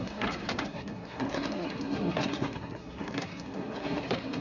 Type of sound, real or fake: fake